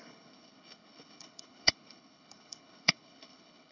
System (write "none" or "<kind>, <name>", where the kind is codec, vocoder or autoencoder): codec, HILCodec